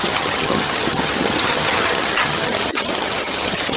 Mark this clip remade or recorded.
remade